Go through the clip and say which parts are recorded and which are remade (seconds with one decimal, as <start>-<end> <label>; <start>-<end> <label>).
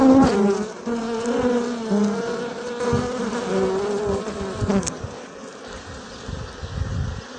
0.0-7.4 recorded